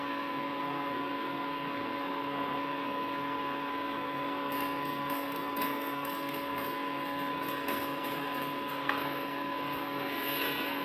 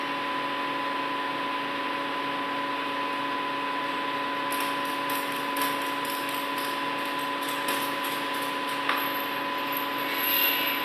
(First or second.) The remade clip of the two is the first